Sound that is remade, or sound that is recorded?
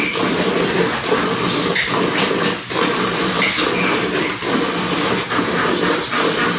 recorded